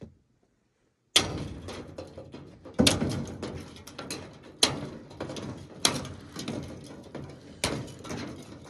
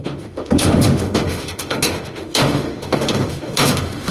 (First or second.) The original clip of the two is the first